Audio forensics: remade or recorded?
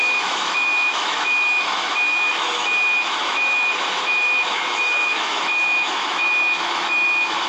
remade